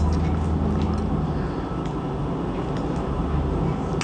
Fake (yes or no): no